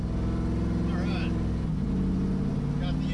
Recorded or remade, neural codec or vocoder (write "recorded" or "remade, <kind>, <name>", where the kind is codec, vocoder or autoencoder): recorded